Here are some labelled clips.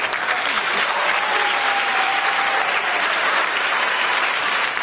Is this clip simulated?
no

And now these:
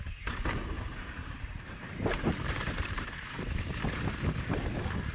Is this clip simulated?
yes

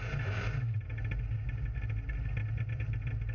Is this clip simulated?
no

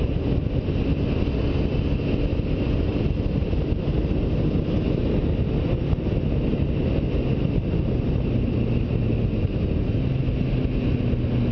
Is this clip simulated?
no